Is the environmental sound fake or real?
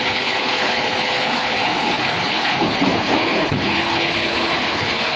fake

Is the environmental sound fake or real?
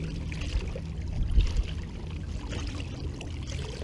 real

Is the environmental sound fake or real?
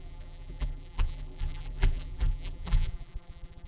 fake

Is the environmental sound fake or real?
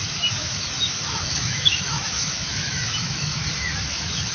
fake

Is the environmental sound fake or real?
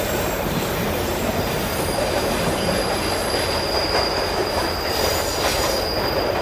fake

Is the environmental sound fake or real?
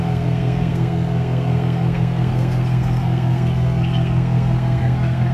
fake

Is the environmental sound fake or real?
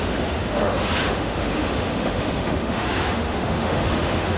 fake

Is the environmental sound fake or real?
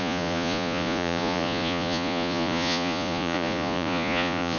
fake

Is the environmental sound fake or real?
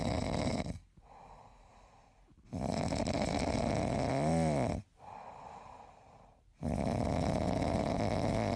real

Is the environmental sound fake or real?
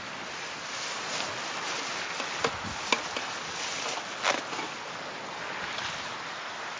real